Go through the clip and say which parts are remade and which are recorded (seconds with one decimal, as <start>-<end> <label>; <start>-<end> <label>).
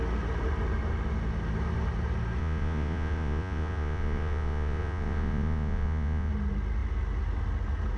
0.0-2.4 recorded; 2.4-6.3 remade; 6.3-8.0 recorded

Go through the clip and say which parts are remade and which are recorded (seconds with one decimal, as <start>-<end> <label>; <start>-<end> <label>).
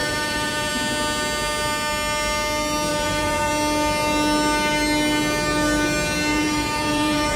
0.0-0.7 remade; 0.7-2.9 recorded; 2.9-3.5 remade; 3.5-6.3 recorded; 6.3-7.4 remade